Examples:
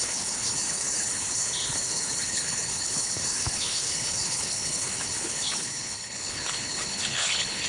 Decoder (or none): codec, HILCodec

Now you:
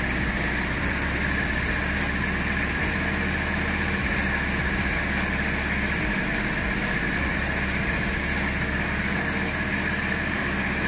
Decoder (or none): none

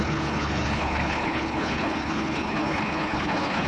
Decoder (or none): codec, HILCodec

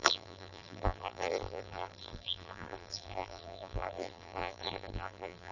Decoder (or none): vocoder, BigVGAN v2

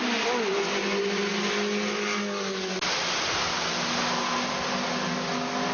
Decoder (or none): none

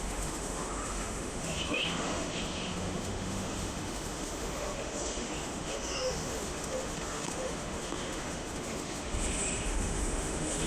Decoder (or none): autoencoder, DAC-VAE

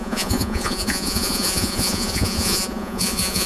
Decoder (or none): vocoder, Vocos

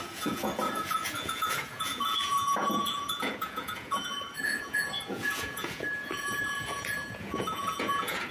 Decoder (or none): vocoder, Vocos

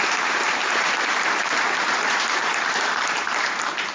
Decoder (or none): vocoder, BigVGAN v2